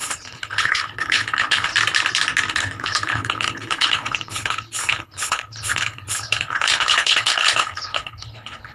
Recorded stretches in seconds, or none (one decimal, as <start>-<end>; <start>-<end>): 1.7-2.5